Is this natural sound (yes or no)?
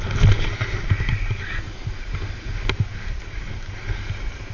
yes